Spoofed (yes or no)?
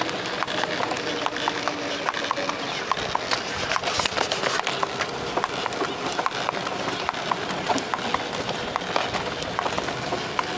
no